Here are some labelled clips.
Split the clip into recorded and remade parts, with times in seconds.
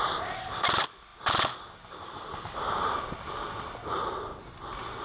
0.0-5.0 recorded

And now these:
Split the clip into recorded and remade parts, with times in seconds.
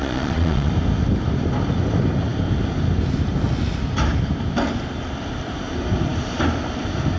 0.0-0.7 remade; 0.7-7.2 recorded